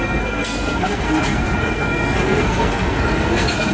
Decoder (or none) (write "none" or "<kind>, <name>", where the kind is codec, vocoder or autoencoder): codec, SNAC